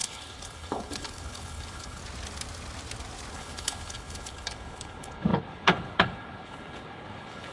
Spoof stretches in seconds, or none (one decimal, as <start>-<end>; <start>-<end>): 0.0-2.0; 3.3-7.5